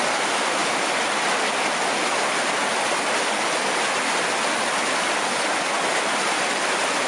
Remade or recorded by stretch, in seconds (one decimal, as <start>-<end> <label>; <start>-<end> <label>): 0.0-7.1 recorded